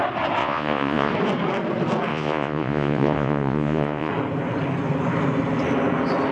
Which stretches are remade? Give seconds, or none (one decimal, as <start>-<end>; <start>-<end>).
0.4-1.1; 2.1-4.1